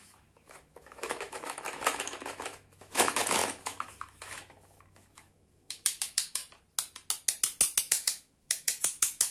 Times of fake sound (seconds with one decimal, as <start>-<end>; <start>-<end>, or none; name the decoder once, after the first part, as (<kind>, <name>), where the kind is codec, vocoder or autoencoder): 0.0-6.4 (autoencoder, DAC-VAE); 7.8-9.3